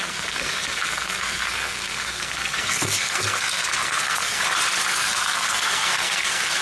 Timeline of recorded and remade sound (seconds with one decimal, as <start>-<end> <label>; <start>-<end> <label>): 0.0-4.4 remade; 4.4-4.9 recorded; 4.9-6.6 remade